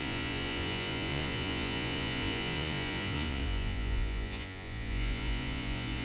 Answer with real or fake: fake